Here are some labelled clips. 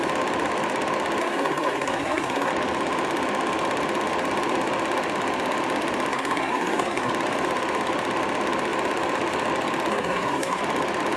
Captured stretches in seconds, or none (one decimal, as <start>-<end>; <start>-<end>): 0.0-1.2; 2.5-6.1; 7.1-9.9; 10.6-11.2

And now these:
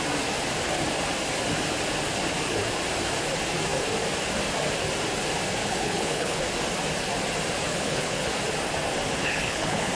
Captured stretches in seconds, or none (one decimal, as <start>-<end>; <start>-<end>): 0.0-5.6; 6.4-7.7; 8.3-9.2

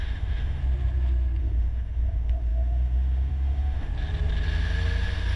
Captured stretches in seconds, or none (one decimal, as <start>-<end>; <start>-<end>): 0.6-1.4; 3.9-5.4

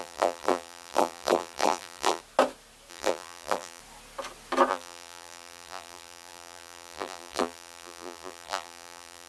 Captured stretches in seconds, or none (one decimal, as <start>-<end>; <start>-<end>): 2.2-2.9; 3.8-4.7

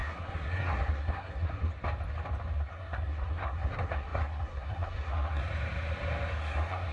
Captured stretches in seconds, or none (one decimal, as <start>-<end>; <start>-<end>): 1.7-2.7; 5.5-6.4

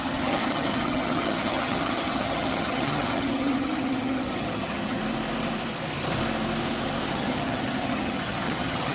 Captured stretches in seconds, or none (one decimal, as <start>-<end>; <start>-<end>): 5.0-7.1

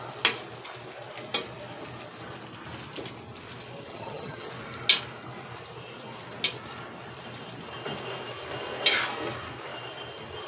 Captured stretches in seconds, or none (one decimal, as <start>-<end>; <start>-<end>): 0.0-3.9; 4.5-10.5